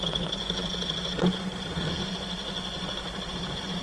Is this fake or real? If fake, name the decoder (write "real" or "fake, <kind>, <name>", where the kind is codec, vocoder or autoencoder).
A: fake, vocoder, Vocos